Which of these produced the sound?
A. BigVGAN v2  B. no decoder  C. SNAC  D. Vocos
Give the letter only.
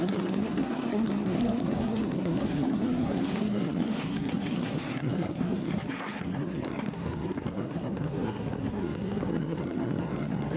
C